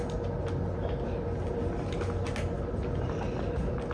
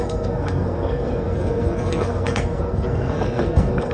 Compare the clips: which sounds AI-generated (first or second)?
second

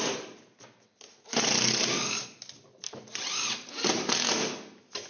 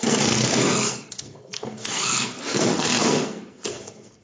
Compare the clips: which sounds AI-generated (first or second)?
second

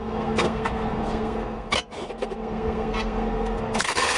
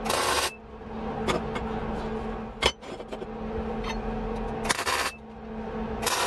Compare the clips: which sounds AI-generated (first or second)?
first